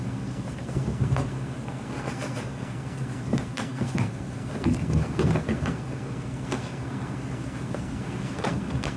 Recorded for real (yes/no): no